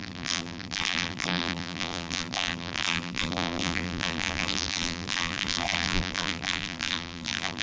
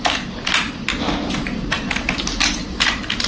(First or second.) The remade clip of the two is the first